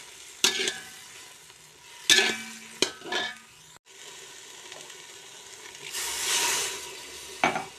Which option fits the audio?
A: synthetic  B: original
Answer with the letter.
B